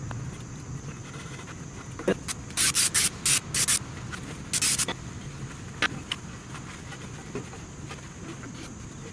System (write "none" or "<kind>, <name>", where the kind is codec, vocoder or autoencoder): none